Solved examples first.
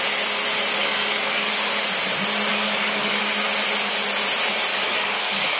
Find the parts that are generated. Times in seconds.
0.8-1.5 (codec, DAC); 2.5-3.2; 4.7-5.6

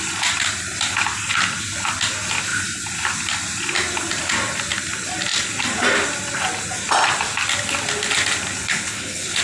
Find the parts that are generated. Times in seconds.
8.6-9.4 (codec, HILCodec)

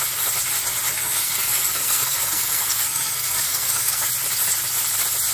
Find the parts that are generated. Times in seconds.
0.9-4.1 (codec, SNAC)

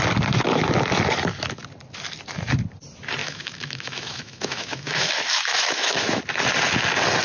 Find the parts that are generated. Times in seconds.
3.2-6.2 (autoencoder, DAC-VAE)

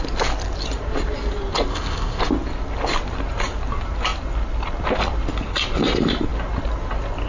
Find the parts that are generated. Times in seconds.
1.7-2.2 (codec, ZipCodec)